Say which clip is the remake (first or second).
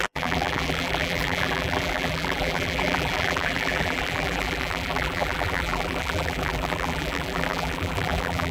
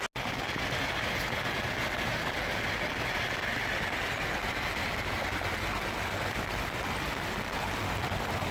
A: first